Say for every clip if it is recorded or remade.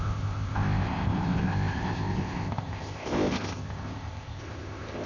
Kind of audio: remade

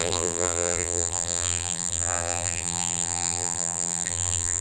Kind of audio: remade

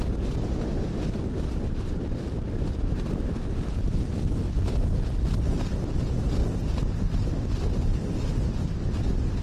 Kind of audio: recorded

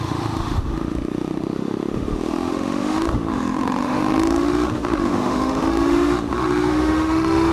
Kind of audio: remade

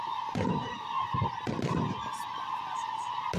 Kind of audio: recorded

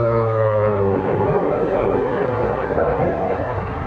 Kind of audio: remade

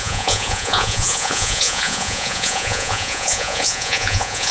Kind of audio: remade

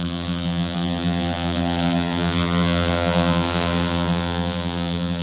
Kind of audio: remade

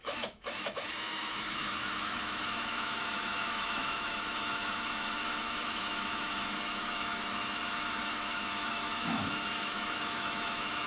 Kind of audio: remade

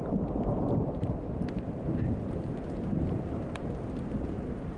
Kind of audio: remade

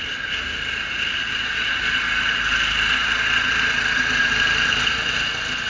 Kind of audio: recorded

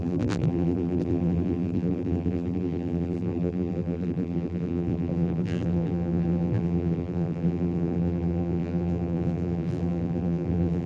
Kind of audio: remade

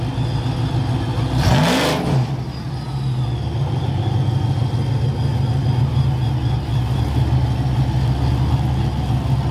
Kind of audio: recorded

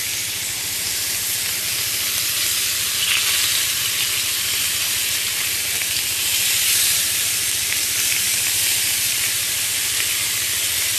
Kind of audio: recorded